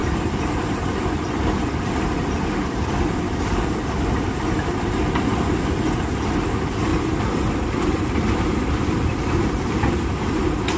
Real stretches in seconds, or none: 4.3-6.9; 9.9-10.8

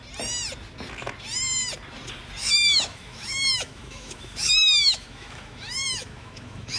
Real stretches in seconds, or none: 0.0-2.4

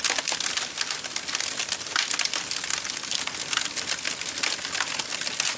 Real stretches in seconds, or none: 0.0-5.6

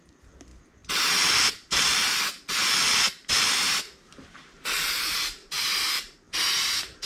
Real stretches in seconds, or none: 0.0-0.5; 1.9-3.1